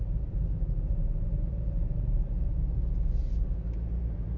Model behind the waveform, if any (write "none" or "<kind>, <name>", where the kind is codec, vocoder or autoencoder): vocoder, BigVGAN v2